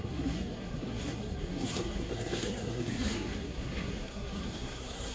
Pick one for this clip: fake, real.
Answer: fake